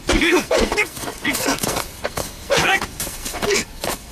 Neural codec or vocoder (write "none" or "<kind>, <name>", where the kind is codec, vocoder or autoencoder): codec, SNAC